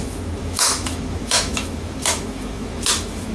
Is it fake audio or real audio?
fake